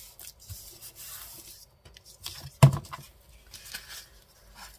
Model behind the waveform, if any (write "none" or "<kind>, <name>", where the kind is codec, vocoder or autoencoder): none